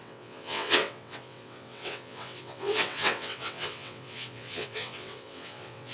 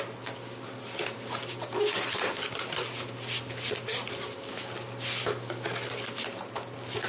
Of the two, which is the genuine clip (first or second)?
second